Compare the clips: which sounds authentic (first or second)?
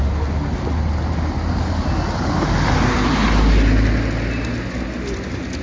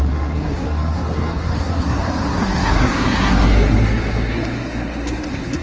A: first